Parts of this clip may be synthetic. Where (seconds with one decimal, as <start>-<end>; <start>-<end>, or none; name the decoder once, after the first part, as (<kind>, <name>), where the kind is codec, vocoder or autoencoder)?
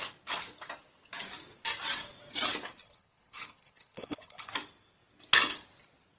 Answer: 2.8-4.5 (codec, HILCodec)